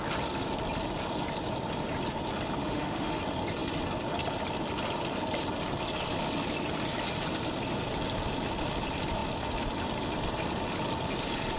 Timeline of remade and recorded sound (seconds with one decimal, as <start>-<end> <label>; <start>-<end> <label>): 0.0-2.6 recorded; 2.6-3.2 remade; 3.2-11.6 recorded